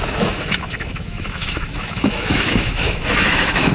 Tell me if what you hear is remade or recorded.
remade